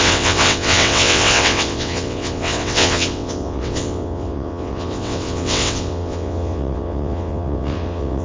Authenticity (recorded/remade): remade